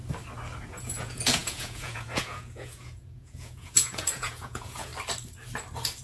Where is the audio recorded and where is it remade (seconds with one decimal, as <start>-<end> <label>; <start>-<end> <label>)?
0.0-0.6 recorded; 0.6-4.9 remade; 4.9-6.0 recorded

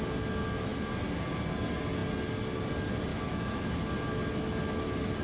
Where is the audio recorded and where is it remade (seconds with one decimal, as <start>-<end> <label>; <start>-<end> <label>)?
0.0-3.1 recorded; 3.1-3.7 remade; 3.7-5.2 recorded

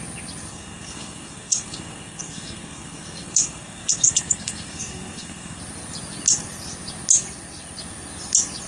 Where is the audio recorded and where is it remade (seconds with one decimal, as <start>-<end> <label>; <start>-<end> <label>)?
0.0-0.5 recorded; 0.5-5.6 remade; 5.6-8.7 recorded